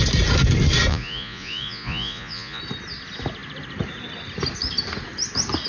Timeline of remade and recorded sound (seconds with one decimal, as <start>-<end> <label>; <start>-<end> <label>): 0.0-0.9 recorded; 0.9-2.6 remade; 2.6-5.7 recorded